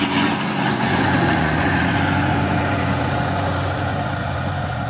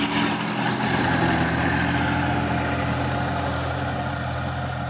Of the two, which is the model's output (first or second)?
first